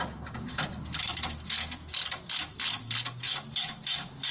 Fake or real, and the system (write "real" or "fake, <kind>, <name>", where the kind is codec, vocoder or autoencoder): real